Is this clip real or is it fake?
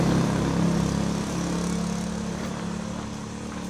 real